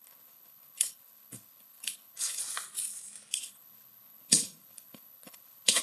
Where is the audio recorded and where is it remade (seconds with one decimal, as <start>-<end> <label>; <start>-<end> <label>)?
0.0-2.4 remade; 2.4-3.4 recorded; 3.4-5.8 remade